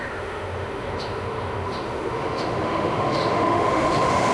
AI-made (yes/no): yes